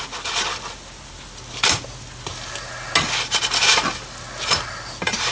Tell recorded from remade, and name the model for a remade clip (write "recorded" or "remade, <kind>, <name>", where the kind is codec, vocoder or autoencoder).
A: recorded